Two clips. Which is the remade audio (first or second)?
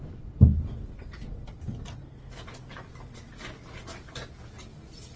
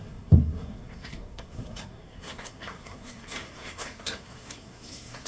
second